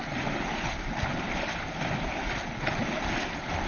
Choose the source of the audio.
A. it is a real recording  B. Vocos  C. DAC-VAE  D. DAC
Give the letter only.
A